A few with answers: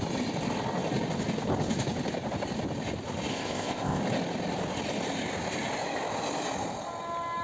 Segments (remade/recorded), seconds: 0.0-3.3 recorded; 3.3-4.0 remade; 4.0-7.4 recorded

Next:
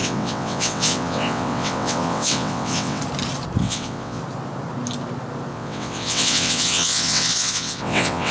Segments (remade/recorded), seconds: 0.0-3.0 remade; 3.0-3.6 recorded; 3.6-4.2 remade; 4.2-5.5 recorded; 5.5-8.3 remade

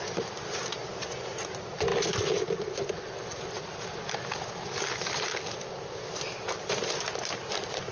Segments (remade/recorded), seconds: 0.0-7.9 recorded

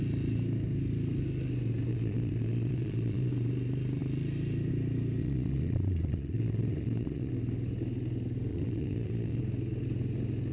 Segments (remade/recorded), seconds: 0.0-1.9 recorded; 1.9-3.3 remade; 3.3-5.2 recorded; 5.2-7.3 remade; 7.3-8.5 recorded; 8.5-9.4 remade; 9.4-10.5 recorded

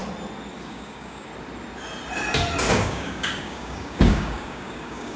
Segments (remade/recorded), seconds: 0.0-0.7 recorded; 0.7-1.3 remade; 1.3-2.7 recorded; 2.7-5.2 remade

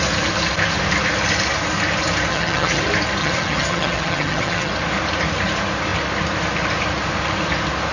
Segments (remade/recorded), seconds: 0.0-2.3 recorded; 2.3-2.8 remade; 2.8-3.2 recorded; 3.2-4.7 remade; 4.7-7.9 recorded

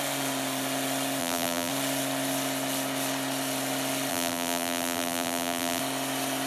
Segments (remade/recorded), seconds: 0.0-1.2 recorded; 1.2-1.7 remade; 1.7-4.1 recorded; 4.1-5.8 remade; 5.8-6.5 recorded